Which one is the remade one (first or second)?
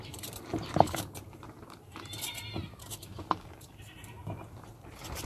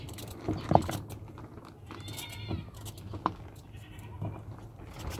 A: first